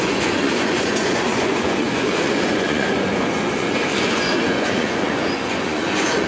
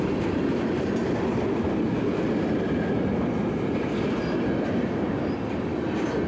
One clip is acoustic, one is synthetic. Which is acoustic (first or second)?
second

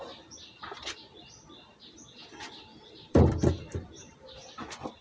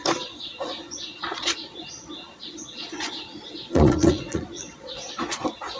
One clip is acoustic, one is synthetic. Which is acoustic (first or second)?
first